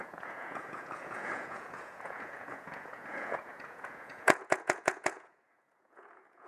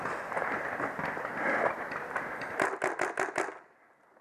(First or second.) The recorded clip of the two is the second